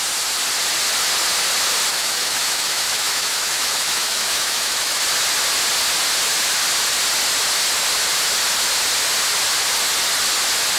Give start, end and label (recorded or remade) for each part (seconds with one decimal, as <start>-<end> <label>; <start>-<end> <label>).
0.0-1.9 recorded; 1.9-5.0 remade; 5.0-10.8 recorded